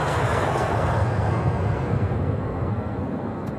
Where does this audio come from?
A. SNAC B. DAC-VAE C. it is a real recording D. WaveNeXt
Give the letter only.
A